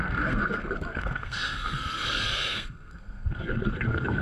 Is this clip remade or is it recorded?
remade